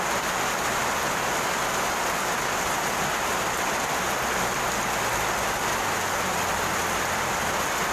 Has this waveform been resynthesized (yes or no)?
no